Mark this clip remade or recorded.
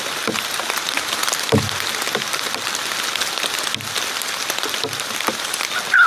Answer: recorded